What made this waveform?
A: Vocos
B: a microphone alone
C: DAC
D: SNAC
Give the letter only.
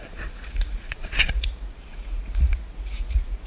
A